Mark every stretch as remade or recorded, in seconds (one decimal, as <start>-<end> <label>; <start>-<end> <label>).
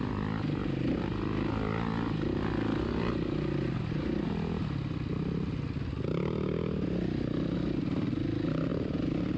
0.0-9.4 recorded